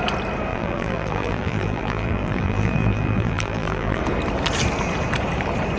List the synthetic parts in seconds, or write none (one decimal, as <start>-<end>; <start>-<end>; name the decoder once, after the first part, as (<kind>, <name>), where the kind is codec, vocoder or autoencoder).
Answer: 0.5-4.0 (vocoder, BigVGAN v2)